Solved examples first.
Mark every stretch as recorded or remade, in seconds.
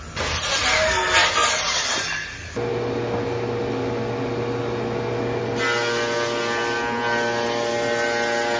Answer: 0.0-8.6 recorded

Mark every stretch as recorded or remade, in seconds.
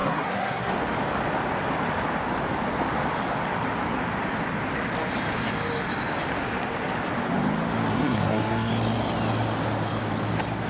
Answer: 0.0-0.7 remade; 0.7-7.9 recorded; 7.9-8.7 remade; 8.7-10.7 recorded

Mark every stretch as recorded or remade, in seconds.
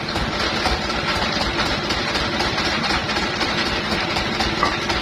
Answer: 0.0-1.1 recorded; 1.1-1.7 remade; 1.7-3.0 recorded; 3.0-4.2 remade; 4.2-5.0 recorded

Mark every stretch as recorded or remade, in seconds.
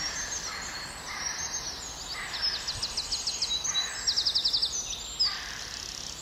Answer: 0.0-6.2 recorded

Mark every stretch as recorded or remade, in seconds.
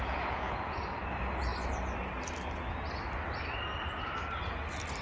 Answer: 0.0-0.8 remade; 0.8-5.0 recorded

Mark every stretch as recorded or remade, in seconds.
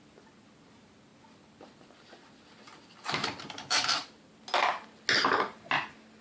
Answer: 0.0-6.2 recorded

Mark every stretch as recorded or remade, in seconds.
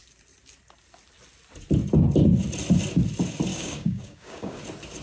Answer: 0.0-3.5 recorded; 3.5-4.6 remade; 4.6-5.0 recorded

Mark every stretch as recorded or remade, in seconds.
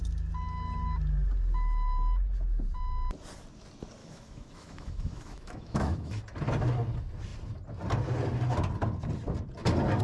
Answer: 0.0-4.0 recorded; 4.0-6.2 remade; 6.2-10.0 recorded